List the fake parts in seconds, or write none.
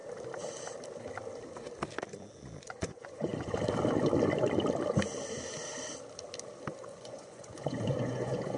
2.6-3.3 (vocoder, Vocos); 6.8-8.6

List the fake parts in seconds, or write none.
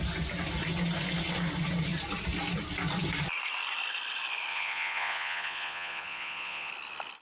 4.5-6.7 (vocoder, Vocos)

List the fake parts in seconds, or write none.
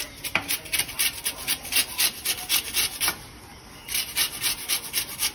none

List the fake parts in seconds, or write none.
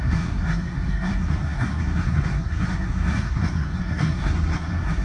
0.0-5.0 (codec, SNAC)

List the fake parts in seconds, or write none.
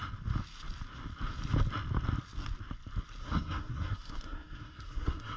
3.2-5.4 (codec, SNAC)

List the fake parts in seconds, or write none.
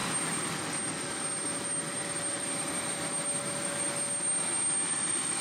none